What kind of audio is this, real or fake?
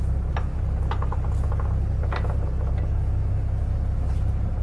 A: real